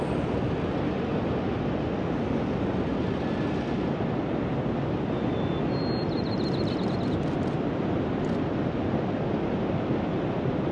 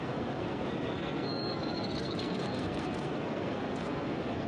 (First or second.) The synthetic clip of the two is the second